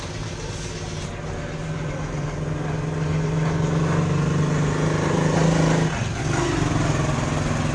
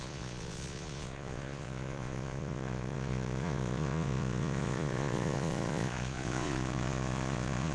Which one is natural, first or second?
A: first